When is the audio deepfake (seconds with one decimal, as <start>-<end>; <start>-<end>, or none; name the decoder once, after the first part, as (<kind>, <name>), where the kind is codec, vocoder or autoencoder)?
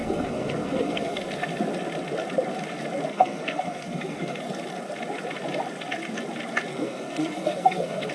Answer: 0.0-1.2 (codec, SNAC); 3.1-4.4; 6.7-8.1